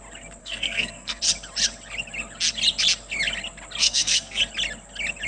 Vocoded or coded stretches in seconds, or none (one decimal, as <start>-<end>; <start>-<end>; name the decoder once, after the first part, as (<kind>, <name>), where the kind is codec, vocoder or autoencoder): 0.4-1.2 (codec, SNAC); 3.8-4.4

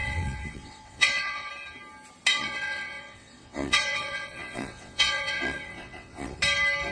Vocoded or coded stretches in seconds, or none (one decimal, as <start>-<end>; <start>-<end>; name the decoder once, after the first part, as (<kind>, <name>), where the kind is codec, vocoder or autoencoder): 0.0-1.5 (vocoder, WaveNeXt); 2.3-6.4